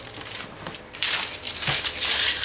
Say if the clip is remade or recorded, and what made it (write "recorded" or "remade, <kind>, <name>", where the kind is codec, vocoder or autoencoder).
recorded